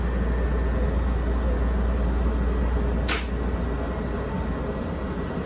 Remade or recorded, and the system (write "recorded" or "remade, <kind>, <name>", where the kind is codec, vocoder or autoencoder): recorded